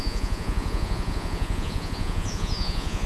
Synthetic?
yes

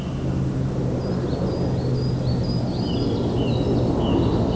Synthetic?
no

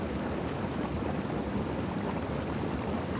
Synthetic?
no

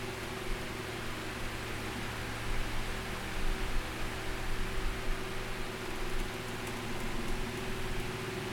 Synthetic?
no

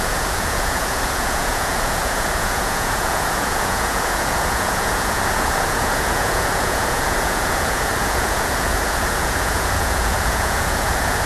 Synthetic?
yes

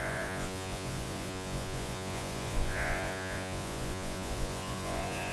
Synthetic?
yes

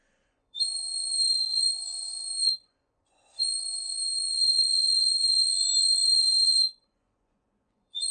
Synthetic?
yes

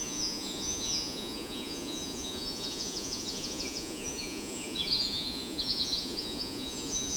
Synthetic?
yes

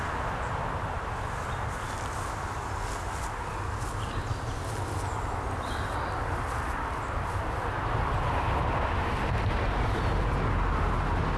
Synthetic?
no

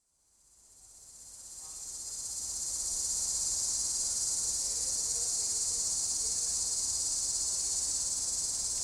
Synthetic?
no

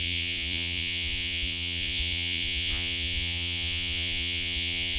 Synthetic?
yes